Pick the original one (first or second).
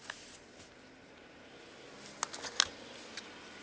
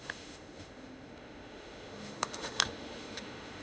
first